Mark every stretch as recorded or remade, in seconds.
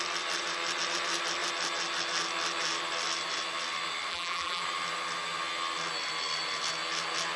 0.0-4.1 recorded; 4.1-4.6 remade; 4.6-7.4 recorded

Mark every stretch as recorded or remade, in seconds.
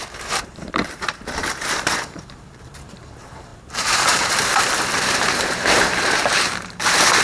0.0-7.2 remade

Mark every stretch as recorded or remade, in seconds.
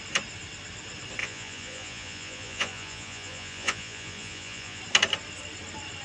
0.0-1.2 recorded; 1.2-4.8 remade; 4.8-6.0 recorded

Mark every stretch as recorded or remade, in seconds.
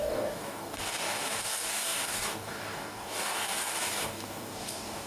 0.0-5.1 remade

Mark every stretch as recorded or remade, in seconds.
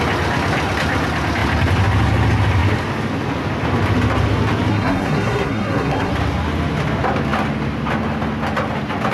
0.0-4.7 recorded; 4.7-6.1 remade; 6.1-9.1 recorded